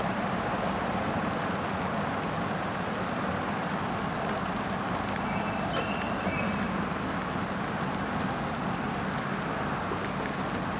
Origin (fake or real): real